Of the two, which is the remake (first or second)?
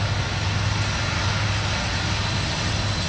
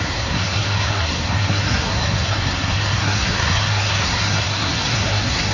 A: second